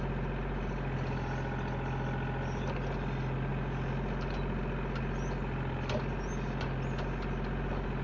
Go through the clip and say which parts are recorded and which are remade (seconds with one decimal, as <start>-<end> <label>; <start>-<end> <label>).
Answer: 0.0-8.0 recorded